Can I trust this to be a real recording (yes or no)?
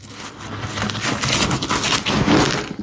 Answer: yes